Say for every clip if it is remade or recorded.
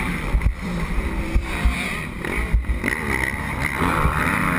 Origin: remade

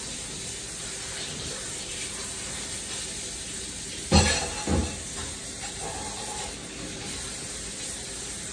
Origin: recorded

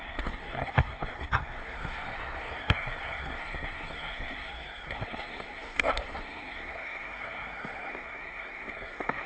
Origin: remade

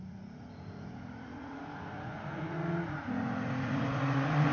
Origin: remade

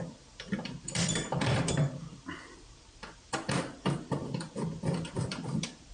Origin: remade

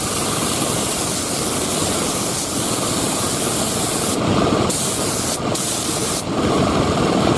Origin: recorded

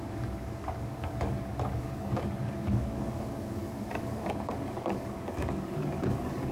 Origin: remade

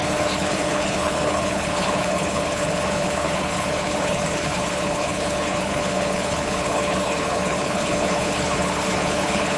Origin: remade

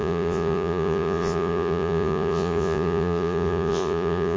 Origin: remade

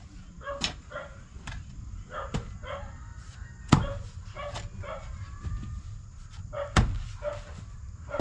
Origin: recorded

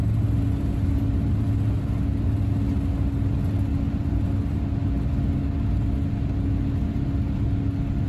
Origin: recorded